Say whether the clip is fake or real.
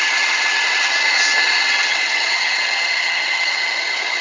fake